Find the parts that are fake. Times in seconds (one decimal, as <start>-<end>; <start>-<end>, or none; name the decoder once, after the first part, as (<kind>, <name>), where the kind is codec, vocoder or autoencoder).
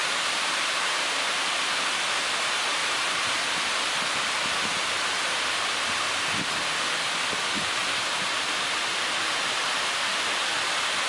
0.0-1.9 (vocoder, BigVGAN v2); 2.8-6.9; 7.8-10.1